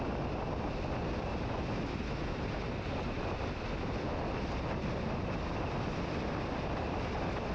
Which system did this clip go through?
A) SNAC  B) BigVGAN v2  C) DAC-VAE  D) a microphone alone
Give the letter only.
D